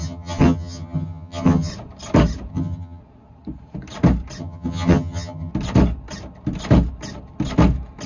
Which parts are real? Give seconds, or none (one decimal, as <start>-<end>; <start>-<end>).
1.7-2.5; 3.0-4.4; 5.5-8.1